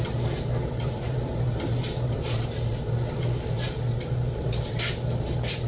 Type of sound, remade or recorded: remade